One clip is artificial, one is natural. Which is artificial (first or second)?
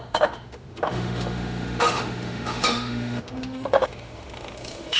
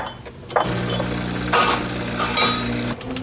first